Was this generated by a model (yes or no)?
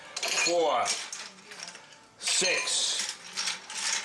no